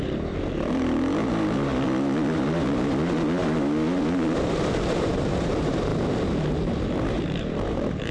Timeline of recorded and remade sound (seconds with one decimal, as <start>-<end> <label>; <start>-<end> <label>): 0.0-1.7 remade; 1.7-4.5 recorded; 4.5-5.9 remade; 5.9-6.9 recorded; 6.9-8.1 remade